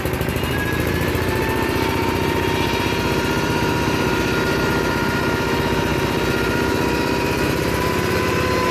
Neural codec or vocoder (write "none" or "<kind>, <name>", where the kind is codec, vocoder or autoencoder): vocoder, BigVGAN v2